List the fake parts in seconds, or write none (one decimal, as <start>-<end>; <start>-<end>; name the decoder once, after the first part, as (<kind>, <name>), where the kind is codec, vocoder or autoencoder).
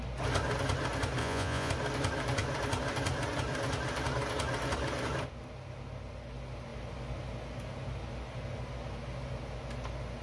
1.2-1.7 (vocoder, Vocos)